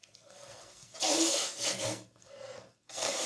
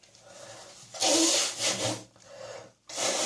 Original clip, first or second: second